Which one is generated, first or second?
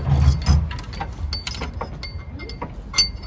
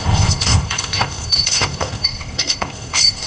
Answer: second